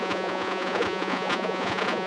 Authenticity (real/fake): fake